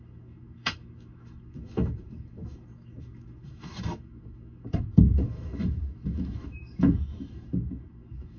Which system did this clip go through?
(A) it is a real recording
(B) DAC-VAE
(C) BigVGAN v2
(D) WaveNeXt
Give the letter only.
B